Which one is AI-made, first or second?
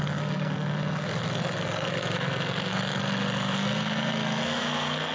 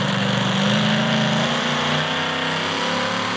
first